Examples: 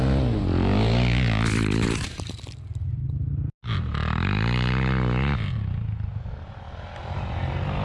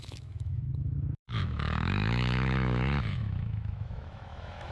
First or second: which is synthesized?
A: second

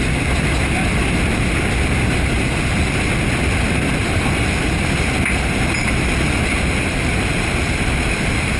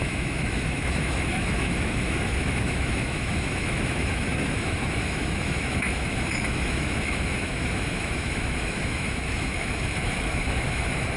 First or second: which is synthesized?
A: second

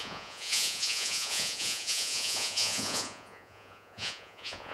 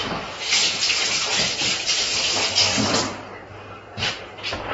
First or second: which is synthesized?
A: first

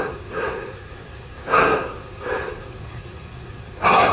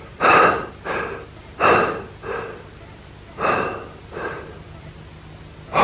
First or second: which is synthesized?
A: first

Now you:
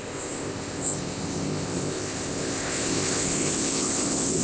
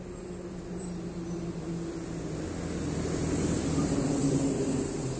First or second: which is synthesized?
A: first